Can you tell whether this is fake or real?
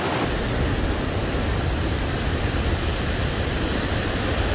real